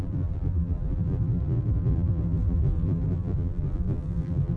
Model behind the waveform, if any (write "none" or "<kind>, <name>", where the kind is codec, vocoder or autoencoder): vocoder, BigVGAN v2